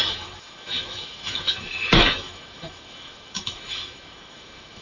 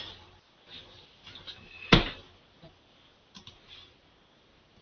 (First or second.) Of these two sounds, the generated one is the first